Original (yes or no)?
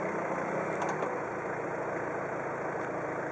yes